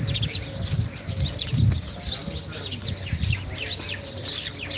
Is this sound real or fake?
real